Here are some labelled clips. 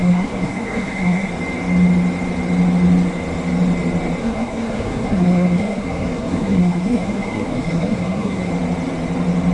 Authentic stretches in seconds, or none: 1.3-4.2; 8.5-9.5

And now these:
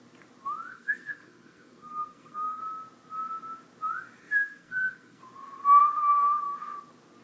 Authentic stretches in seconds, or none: 0.0-0.7; 2.6-4.2; 5.2-5.8; 6.4-7.2

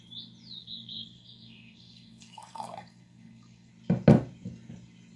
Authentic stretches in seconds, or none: 0.0-0.6; 3.7-5.2